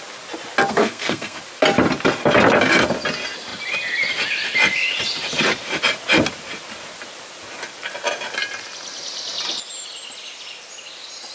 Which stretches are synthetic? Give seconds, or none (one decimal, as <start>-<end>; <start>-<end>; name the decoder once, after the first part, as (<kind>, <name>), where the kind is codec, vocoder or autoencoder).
0.7-1.4 (codec, SNAC)